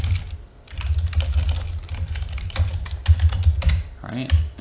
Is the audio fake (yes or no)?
no